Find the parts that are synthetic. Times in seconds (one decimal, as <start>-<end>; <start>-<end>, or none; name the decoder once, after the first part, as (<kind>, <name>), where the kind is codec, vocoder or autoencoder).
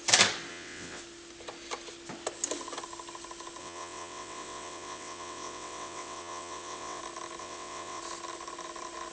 0.5-1.0 (vocoder, WaveNeXt); 3.6-7.0; 7.4-8.0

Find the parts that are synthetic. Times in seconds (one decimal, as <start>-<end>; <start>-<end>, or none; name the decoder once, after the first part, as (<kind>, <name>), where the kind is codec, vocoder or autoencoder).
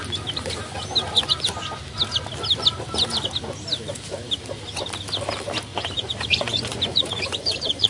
5.7-7.9 (vocoder, Vocos)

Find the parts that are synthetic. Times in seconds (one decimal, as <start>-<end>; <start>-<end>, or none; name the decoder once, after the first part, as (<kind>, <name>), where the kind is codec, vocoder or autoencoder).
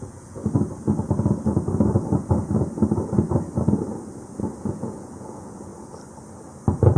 0.0-0.4 (vocoder, Vocos); 4.6-5.7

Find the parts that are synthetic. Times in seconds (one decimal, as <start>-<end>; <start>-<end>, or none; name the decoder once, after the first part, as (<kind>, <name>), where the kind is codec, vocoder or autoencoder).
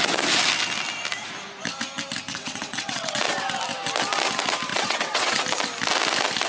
2.3-3.2 (vocoder, WaveNeXt); 4.7-5.4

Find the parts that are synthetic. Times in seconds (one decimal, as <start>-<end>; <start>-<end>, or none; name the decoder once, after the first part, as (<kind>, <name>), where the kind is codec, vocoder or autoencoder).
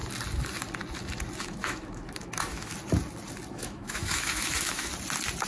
1.4-2.7 (autoencoder, DAC-VAE); 3.5-4.9